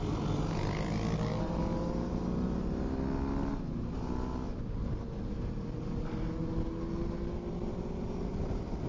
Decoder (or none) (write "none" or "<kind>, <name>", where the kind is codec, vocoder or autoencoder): none